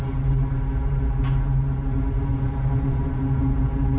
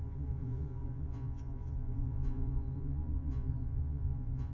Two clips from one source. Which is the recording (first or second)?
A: first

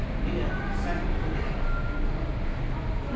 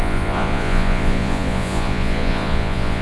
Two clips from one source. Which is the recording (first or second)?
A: first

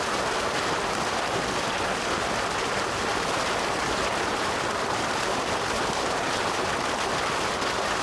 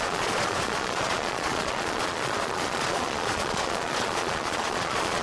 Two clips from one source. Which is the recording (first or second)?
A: first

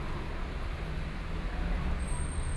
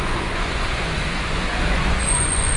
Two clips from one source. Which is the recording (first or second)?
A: first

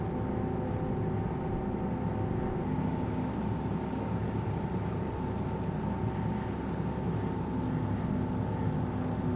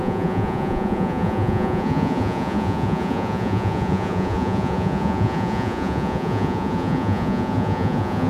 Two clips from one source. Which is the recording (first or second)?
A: first